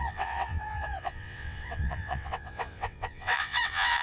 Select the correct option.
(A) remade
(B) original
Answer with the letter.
A